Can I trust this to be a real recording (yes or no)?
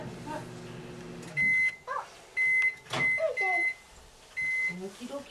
yes